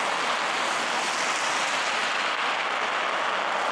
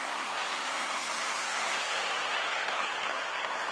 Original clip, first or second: first